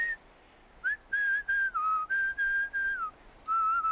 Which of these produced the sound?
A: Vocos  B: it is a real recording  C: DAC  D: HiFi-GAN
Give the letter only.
B